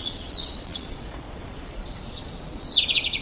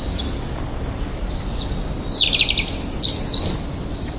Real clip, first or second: second